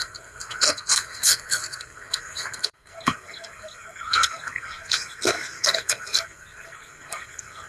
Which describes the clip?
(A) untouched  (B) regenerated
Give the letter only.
B